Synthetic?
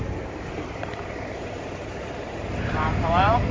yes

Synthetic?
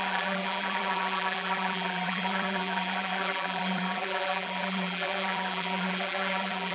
yes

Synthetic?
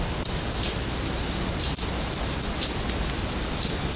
no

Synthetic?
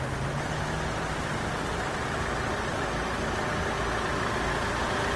no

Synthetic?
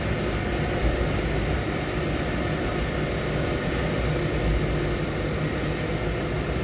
no